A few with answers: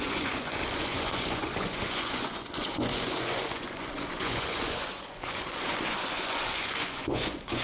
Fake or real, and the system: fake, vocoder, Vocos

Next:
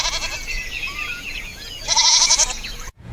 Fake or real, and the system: fake, vocoder, Vocos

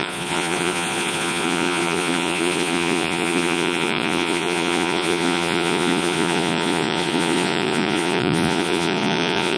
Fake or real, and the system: fake, vocoder, Vocos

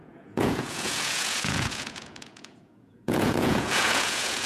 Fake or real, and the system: fake, vocoder, Vocos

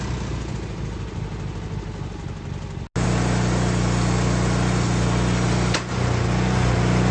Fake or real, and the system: real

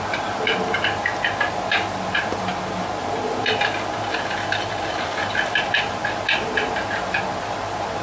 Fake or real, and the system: real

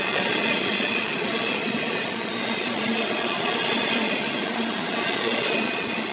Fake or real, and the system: fake, vocoder, Vocos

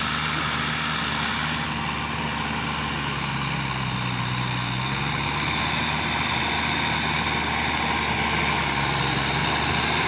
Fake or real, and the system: real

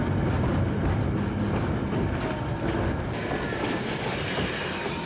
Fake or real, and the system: real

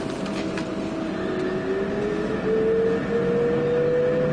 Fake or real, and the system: real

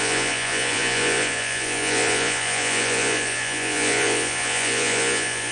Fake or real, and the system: fake, vocoder, Vocos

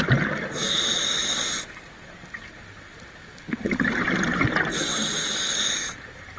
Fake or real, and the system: real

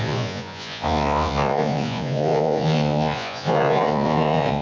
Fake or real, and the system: fake, vocoder, Vocos